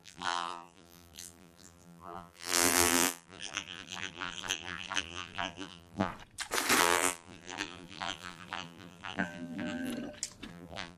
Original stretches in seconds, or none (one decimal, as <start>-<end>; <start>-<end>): 6.1-6.8; 9.9-10.5